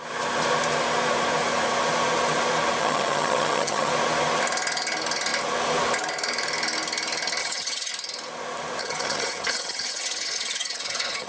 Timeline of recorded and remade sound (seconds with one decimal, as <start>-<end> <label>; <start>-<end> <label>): 0.0-2.8 recorded; 2.8-3.9 remade; 3.9-7.4 recorded; 7.4-7.9 remade; 7.9-8.8 recorded; 8.8-11.3 remade